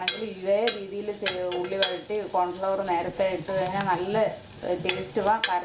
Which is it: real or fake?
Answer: real